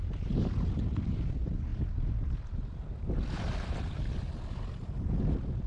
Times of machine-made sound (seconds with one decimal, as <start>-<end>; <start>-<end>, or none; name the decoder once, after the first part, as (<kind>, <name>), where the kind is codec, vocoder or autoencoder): none

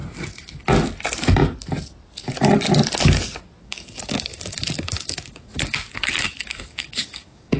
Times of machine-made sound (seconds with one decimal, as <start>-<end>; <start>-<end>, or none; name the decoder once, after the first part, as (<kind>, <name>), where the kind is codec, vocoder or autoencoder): 3.6-7.6 (codec, DAC)

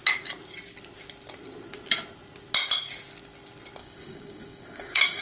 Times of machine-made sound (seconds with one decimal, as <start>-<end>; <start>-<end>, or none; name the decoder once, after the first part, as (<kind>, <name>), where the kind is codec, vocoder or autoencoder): 3.8-5.2 (codec, DAC)